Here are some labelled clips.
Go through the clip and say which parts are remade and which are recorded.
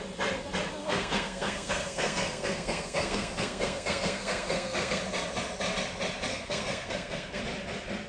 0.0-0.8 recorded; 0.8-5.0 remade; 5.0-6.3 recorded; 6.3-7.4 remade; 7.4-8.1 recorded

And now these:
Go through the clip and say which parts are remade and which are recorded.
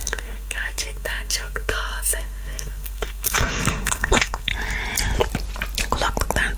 0.0-4.5 remade; 4.5-6.6 recorded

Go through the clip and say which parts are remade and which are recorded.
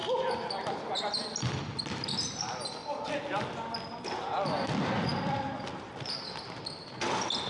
0.0-7.5 recorded